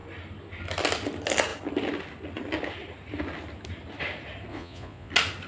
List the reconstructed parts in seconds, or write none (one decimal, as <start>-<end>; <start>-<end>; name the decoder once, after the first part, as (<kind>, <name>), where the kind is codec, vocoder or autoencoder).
4.5-5.1 (vocoder, Vocos)